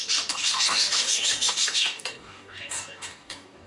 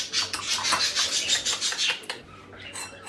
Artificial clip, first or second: first